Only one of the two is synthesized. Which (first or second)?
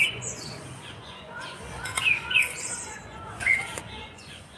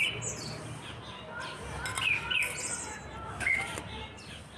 first